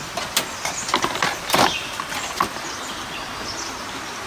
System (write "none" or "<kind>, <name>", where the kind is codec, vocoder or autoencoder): none